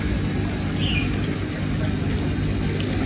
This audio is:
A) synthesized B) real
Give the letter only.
B